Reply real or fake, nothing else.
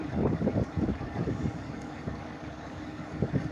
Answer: fake